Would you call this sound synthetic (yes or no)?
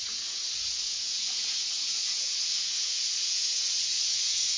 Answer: yes